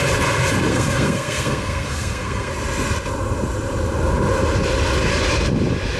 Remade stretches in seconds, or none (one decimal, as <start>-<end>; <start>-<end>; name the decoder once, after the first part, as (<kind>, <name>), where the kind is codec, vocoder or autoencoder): 0.7-2.5 (codec, SNAC)